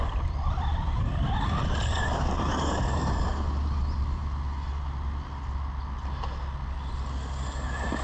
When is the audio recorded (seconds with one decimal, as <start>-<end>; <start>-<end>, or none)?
0.0-8.0